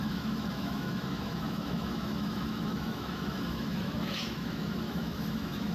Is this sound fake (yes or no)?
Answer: yes